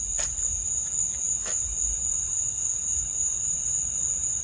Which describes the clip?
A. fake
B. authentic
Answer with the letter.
B